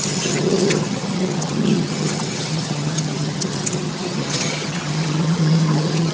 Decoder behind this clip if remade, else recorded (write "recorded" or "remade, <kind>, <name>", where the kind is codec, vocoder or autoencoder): remade, vocoder, HiFi-GAN